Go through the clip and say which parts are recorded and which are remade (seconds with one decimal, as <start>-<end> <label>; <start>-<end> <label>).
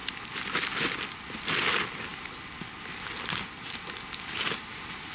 0.0-5.1 recorded